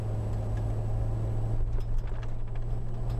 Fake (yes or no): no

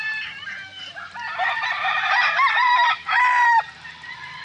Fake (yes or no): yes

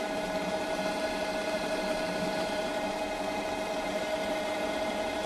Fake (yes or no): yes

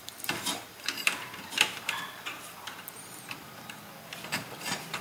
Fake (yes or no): yes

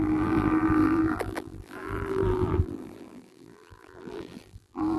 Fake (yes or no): yes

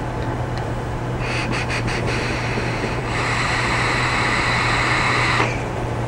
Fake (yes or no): yes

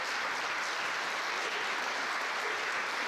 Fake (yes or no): yes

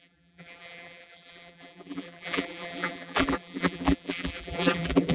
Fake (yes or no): yes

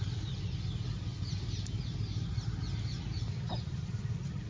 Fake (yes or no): no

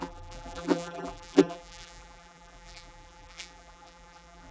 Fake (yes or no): yes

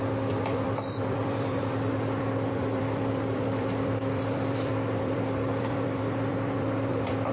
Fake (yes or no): yes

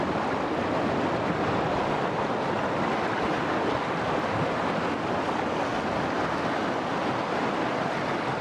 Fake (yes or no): no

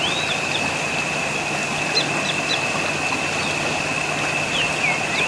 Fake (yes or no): no